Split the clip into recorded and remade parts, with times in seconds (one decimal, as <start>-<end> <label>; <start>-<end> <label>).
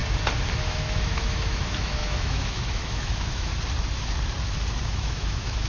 0.0-0.6 recorded; 0.6-3.5 remade; 3.5-4.8 recorded; 4.8-5.7 remade